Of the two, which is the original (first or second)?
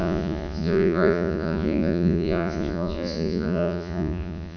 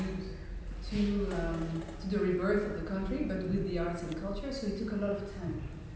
second